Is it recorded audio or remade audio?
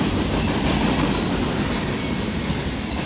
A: recorded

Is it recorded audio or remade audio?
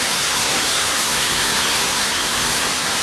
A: remade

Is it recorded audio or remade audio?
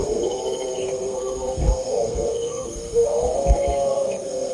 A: remade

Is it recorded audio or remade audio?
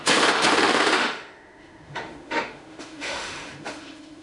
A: remade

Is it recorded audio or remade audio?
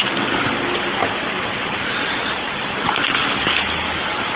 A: recorded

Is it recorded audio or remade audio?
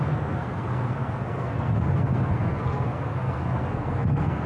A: remade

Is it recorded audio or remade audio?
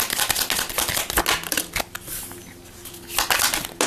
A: recorded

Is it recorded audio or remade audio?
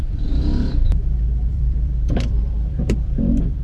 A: remade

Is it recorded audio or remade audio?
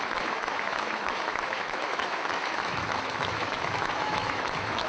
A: remade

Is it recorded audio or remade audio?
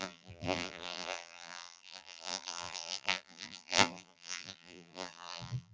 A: remade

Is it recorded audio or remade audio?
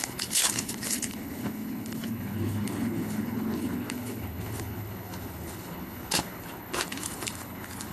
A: remade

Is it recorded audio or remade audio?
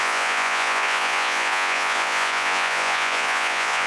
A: remade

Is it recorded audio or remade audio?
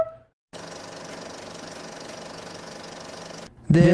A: recorded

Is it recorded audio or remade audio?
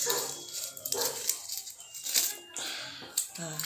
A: recorded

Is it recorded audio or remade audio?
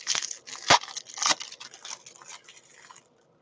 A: recorded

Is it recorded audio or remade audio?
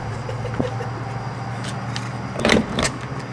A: recorded